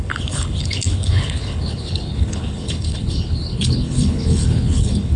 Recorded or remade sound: remade